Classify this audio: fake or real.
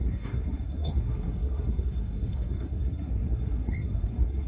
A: fake